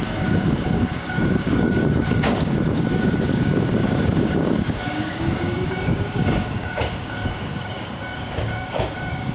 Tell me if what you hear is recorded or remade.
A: remade